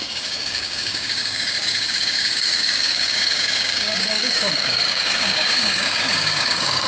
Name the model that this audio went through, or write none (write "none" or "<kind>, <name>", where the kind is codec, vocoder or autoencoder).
codec, DAC